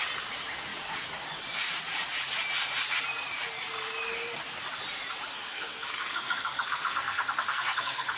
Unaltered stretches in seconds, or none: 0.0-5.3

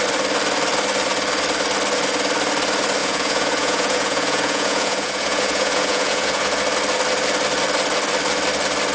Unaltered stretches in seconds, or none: 0.0-3.0; 6.6-8.9

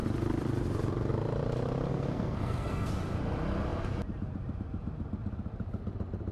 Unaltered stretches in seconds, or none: 0.0-1.9; 2.9-6.3

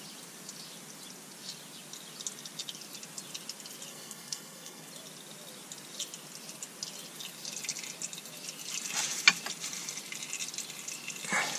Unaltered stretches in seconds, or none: 0.0-3.9; 4.9-11.6

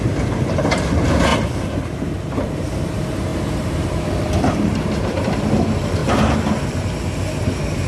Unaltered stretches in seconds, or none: 1.3-2.3; 6.0-6.7

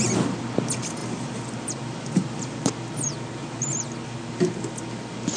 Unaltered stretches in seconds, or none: 0.0-5.4

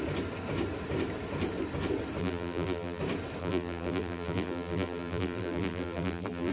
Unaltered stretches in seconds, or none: 0.0-2.2; 3.0-3.4